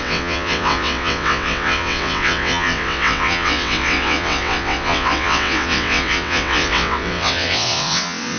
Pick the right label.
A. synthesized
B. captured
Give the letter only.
A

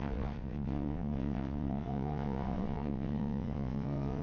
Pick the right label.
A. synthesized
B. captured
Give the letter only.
A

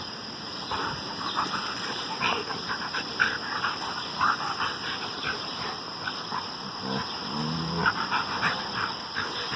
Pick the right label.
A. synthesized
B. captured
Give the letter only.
B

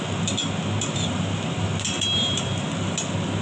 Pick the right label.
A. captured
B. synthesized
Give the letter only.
A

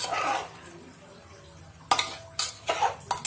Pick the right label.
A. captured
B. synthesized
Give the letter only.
A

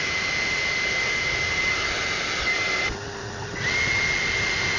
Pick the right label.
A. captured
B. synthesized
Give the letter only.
A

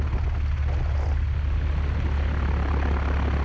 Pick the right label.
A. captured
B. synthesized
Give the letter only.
A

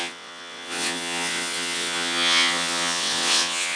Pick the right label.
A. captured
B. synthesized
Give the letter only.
B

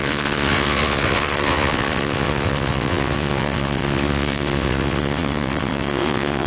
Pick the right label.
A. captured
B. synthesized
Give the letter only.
B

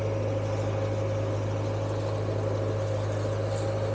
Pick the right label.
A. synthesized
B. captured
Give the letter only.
B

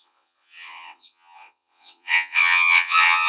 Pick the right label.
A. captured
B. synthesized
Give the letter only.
B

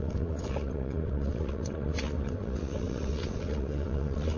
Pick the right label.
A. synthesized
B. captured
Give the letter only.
A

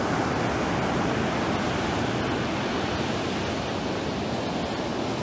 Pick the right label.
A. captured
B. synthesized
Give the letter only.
A